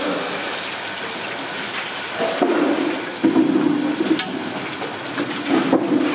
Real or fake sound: real